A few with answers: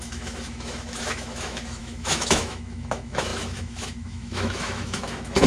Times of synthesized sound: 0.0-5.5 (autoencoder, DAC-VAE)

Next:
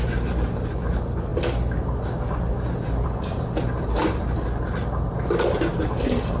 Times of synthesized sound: none

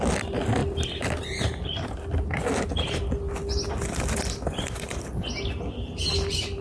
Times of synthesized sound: none

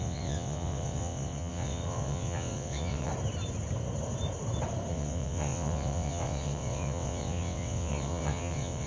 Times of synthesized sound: 0.0-3.1 (vocoder, WaveNeXt); 4.9-8.9